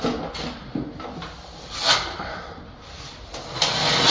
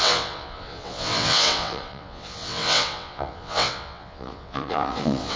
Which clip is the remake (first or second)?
second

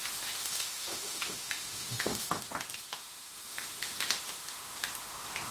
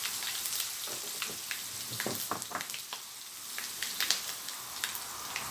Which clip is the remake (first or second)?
first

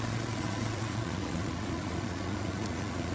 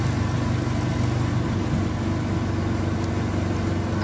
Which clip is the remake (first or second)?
first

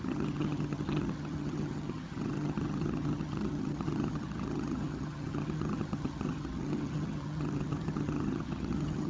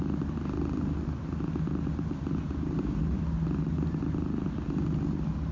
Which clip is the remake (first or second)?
first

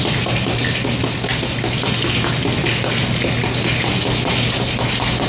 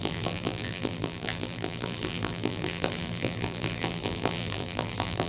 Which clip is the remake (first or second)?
second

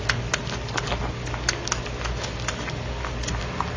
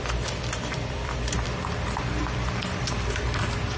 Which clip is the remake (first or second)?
second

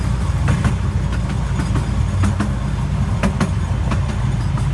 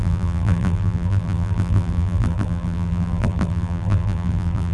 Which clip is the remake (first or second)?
second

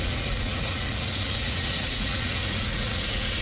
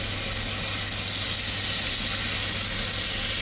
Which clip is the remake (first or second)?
first